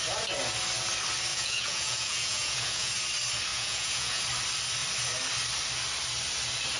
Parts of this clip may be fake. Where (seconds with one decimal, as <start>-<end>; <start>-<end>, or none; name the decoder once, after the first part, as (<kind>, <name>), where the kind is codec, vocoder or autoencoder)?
1.3-2.9 (vocoder, Vocos); 3.5-4.2